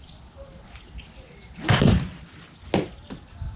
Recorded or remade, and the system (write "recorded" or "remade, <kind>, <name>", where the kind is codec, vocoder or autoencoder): recorded